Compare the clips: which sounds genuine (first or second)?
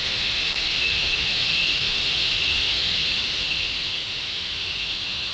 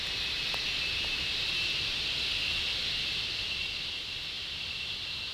second